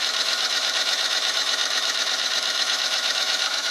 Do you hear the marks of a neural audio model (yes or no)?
yes